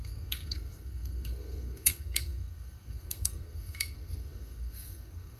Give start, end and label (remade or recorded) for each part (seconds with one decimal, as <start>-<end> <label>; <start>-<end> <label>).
0.0-5.4 remade